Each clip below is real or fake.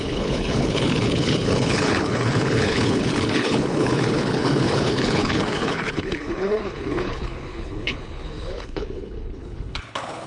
fake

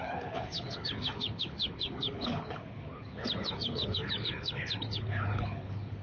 fake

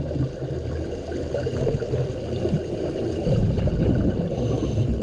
real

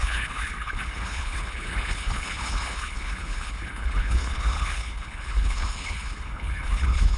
fake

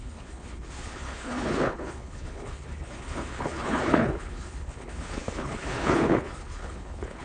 fake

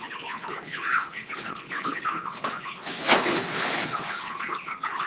fake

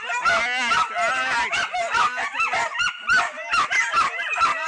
real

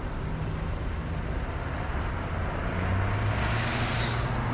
real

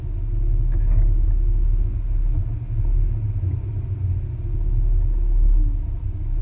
real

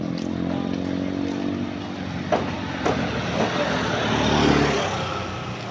real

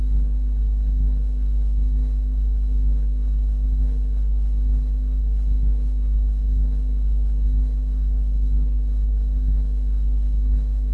fake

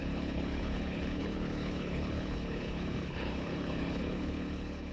fake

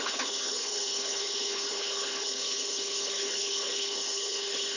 fake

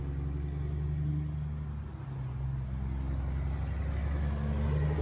real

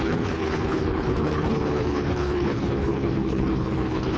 fake